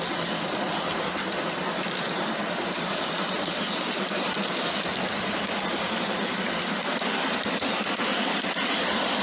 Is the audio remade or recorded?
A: recorded